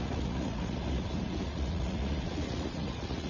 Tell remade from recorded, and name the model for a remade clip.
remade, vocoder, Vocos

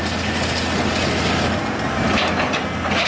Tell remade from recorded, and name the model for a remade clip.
recorded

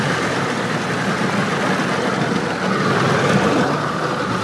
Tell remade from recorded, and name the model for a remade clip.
recorded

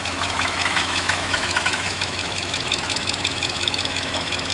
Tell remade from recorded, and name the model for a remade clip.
remade, autoencoder, DAC-VAE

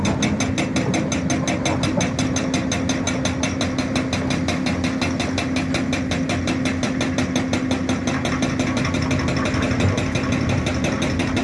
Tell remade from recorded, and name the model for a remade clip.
recorded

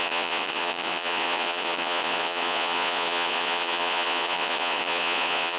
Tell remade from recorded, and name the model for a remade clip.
remade, vocoder, Vocos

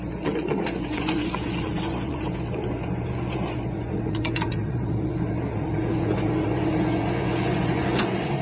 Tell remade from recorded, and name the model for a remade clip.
remade, vocoder, Vocos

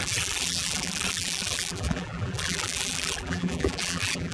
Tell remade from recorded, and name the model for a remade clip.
remade, vocoder, BigVGAN v2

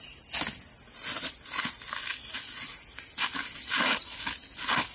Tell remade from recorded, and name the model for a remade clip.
recorded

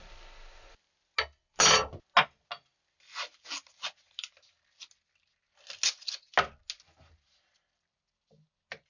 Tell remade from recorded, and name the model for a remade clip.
recorded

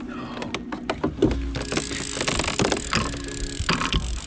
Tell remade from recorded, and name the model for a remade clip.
recorded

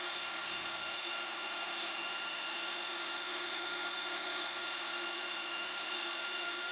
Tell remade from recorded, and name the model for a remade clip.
remade, autoencoder, DAC-VAE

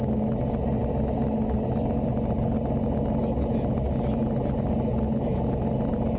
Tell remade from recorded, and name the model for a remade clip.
recorded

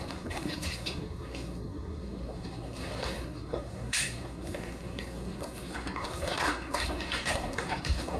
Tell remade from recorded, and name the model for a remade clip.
remade, codec, SNAC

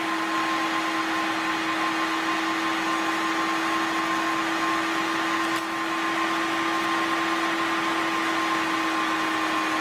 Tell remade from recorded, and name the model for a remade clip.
recorded